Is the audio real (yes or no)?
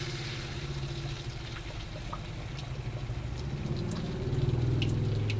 yes